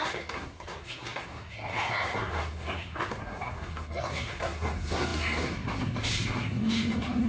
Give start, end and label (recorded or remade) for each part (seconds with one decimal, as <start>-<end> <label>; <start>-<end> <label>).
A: 0.0-7.3 remade